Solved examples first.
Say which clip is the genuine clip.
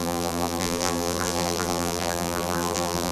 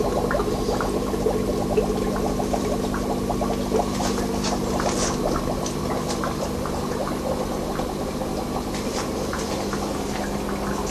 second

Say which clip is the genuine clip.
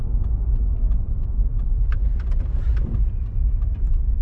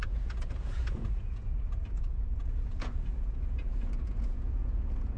first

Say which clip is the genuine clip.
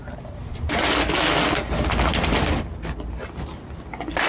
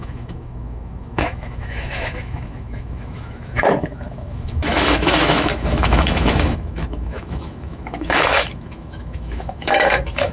first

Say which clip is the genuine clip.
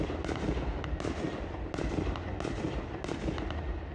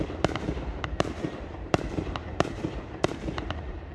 first